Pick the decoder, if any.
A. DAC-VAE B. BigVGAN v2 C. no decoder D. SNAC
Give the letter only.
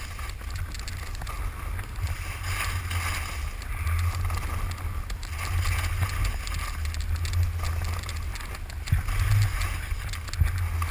C